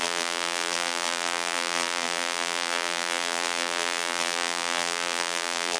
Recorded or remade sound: remade